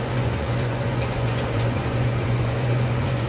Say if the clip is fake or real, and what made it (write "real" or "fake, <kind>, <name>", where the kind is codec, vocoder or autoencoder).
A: fake, vocoder, Vocos